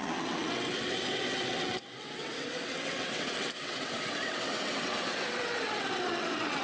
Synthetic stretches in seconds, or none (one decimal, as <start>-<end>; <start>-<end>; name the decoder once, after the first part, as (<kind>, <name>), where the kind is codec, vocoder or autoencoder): 0.0-6.6 (vocoder, WaveNeXt)